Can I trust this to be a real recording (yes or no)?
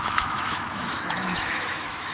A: no